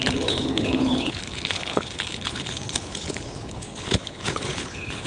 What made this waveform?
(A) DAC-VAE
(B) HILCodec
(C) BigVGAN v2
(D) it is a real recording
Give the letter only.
B